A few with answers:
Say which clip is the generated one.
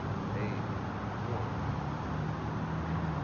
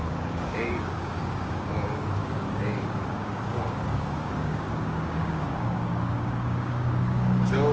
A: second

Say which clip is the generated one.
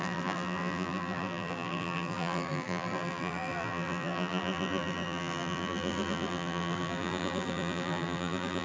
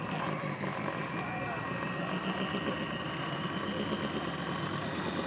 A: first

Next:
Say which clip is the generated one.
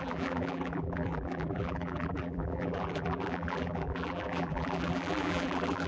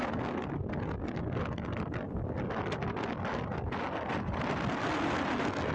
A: first